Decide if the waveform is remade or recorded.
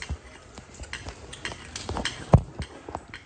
recorded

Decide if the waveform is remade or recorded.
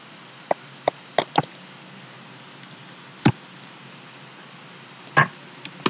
recorded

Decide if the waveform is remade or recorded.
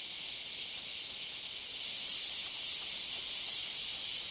recorded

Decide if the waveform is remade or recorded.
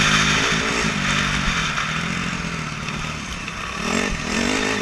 recorded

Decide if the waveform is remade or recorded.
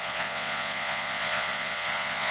remade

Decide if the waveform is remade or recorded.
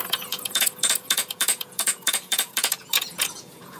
remade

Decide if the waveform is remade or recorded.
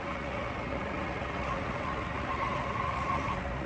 remade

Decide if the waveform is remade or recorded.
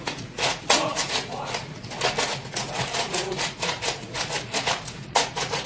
remade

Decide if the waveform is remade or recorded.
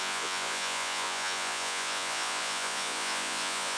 remade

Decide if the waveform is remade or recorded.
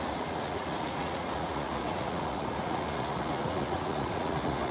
remade